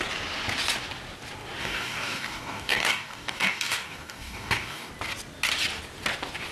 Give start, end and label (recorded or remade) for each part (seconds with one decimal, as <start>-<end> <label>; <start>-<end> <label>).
0.0-1.6 recorded; 1.6-4.9 remade; 4.9-6.5 recorded